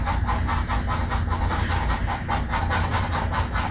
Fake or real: real